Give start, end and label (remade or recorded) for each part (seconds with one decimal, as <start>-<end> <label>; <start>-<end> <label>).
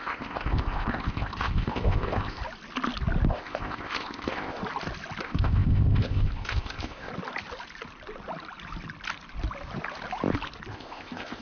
0.0-2.4 remade; 2.4-3.3 recorded; 3.3-4.6 remade; 4.6-5.2 recorded; 5.2-7.1 remade; 7.1-10.7 recorded; 10.7-11.4 remade